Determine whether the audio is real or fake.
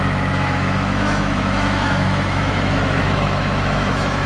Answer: fake